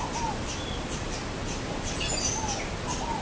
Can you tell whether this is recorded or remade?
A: recorded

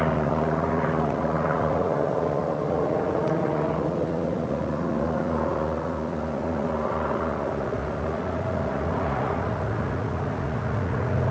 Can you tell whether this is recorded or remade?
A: remade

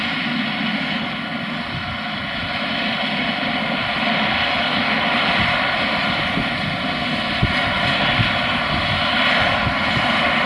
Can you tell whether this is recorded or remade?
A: recorded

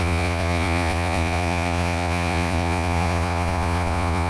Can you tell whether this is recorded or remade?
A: remade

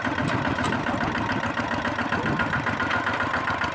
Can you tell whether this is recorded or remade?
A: recorded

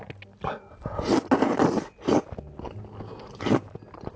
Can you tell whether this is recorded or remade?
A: recorded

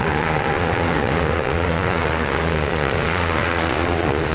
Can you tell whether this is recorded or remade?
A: remade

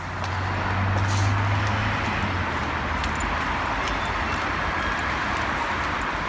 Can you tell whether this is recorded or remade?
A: recorded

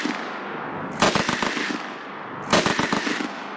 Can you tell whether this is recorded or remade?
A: recorded